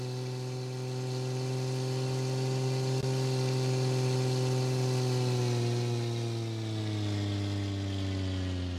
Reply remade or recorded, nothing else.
recorded